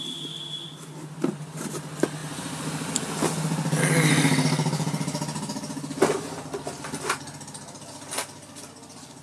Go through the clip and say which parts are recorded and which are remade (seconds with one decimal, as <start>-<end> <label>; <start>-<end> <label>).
0.0-9.2 recorded